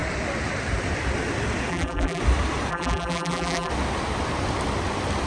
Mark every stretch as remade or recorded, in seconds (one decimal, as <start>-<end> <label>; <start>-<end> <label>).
0.0-1.7 recorded; 1.7-2.2 remade; 2.2-2.7 recorded; 2.7-3.7 remade; 3.7-5.3 recorded